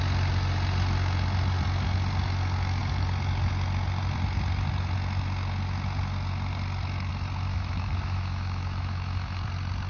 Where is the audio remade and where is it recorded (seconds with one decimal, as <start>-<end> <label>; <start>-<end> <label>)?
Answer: 0.0-7.5 recorded; 7.5-9.4 remade; 9.4-9.9 recorded